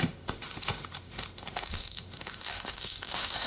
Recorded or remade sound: remade